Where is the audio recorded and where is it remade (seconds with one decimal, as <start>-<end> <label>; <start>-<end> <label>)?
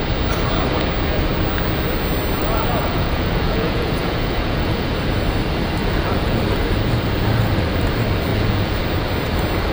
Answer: 0.0-2.4 recorded; 2.4-4.9 remade; 4.9-5.8 recorded; 5.8-6.4 remade; 6.4-8.3 recorded; 8.3-8.8 remade; 8.8-9.7 recorded